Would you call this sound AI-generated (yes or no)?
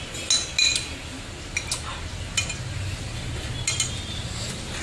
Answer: no